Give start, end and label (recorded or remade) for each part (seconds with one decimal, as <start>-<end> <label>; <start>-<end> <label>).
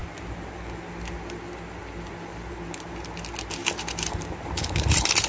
0.0-3.6 recorded; 3.6-5.3 remade